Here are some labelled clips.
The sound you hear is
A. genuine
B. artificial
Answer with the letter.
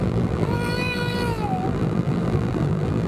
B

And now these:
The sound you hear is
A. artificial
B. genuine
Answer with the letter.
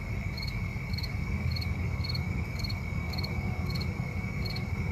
A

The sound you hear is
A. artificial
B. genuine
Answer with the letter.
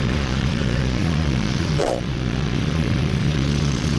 A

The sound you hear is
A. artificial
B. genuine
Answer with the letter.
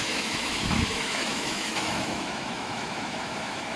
A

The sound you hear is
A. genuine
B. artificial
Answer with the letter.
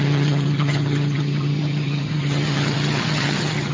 B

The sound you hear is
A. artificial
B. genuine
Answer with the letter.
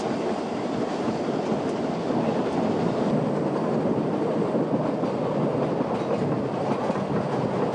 B